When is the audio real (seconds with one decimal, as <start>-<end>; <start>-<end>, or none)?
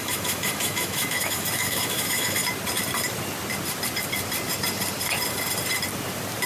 2.4-6.5